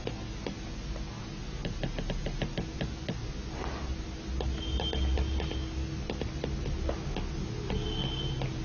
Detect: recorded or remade recorded